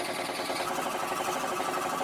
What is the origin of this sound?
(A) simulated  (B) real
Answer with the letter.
B